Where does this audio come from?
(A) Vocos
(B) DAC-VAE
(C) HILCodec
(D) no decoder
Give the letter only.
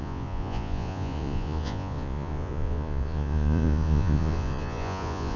A